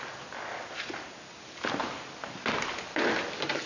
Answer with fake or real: real